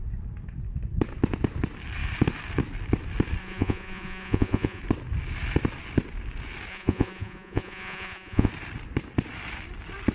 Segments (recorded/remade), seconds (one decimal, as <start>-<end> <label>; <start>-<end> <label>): 0.0-3.4 recorded; 3.4-4.8 remade; 4.8-6.7 recorded; 6.7-8.5 remade; 8.5-10.1 recorded